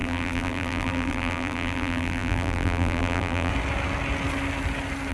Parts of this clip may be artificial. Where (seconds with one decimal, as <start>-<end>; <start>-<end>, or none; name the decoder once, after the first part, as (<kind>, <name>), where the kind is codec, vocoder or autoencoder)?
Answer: 0.0-3.5 (vocoder, BigVGAN v2)